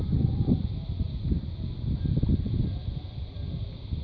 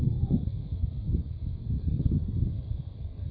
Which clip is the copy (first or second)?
second